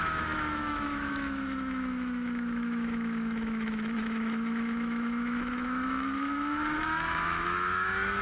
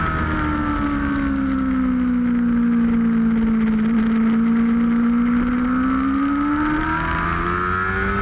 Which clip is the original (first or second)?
second